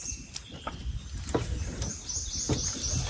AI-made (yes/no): no